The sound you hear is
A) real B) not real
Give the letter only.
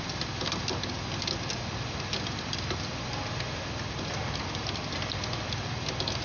A